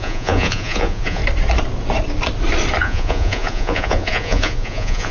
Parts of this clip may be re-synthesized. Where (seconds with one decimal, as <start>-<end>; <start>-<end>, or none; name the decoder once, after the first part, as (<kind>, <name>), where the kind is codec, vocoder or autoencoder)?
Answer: 0.0-1.2 (vocoder, Vocos); 2.8-5.1